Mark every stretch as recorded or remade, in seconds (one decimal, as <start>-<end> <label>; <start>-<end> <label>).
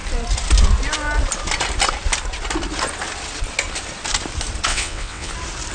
0.0-4.7 recorded; 4.7-5.3 remade; 5.3-5.7 recorded